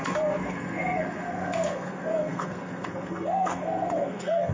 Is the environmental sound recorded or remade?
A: remade